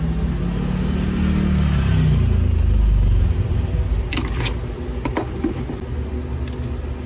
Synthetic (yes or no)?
no